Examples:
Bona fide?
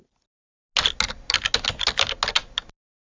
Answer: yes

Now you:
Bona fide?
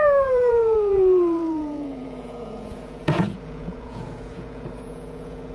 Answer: no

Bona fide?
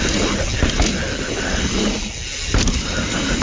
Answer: yes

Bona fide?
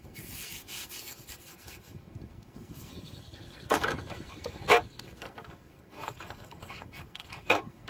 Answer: no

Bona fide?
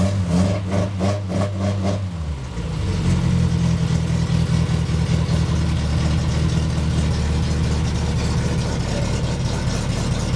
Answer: yes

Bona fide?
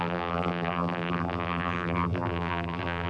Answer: no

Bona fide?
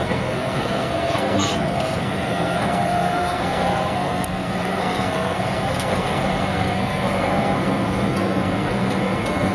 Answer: no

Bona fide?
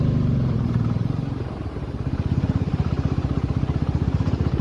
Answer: no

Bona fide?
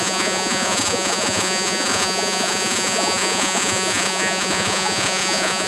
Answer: no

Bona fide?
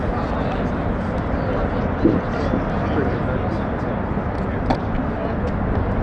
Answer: yes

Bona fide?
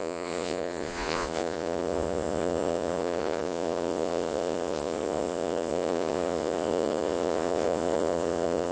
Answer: no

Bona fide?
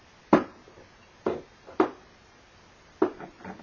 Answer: yes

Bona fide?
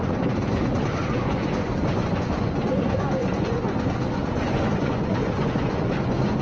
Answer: no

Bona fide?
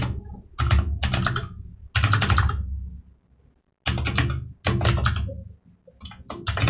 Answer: yes